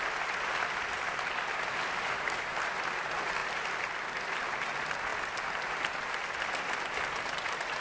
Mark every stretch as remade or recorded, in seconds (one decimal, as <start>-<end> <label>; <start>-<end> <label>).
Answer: 0.0-7.8 recorded